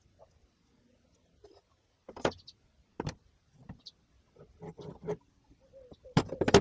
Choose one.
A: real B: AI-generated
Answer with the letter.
A